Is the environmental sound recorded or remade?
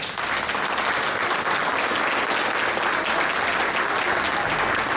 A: recorded